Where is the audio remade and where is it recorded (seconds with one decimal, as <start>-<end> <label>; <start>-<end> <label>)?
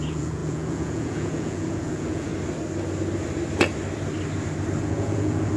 0.0-2.3 remade; 2.3-4.8 recorded; 4.8-5.6 remade